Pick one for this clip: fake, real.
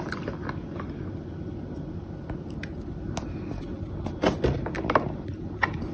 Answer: real